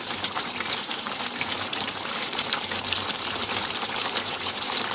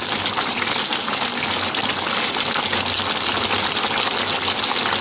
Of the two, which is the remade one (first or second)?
first